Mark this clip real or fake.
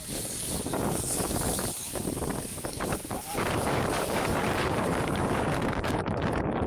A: fake